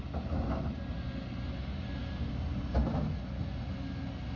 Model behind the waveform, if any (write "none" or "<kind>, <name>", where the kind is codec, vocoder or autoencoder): none